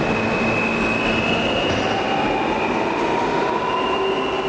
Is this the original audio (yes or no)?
yes